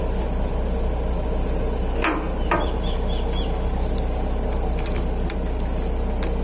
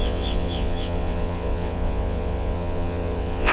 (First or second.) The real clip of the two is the first